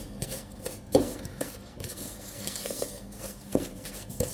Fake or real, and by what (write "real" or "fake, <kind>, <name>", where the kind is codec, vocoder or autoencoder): fake, codec, SNAC